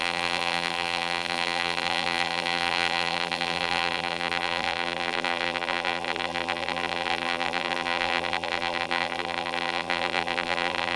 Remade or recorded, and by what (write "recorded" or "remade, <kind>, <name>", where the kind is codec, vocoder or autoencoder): remade, vocoder, BigVGAN v2